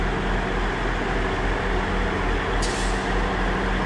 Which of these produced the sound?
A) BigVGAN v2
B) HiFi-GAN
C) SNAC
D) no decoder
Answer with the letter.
D